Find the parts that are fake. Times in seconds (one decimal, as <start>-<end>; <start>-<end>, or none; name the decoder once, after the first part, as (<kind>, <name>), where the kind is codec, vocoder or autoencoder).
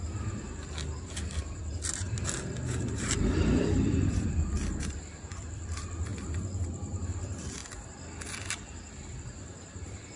0.0-6.1 (vocoder, BigVGAN v2); 7.0-7.6; 8.4-10.2